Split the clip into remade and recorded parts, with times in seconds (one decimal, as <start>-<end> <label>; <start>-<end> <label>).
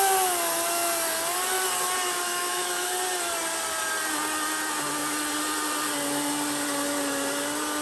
0.0-2.3 recorded; 2.3-3.0 remade; 3.0-7.8 recorded